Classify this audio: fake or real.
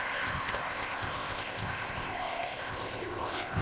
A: fake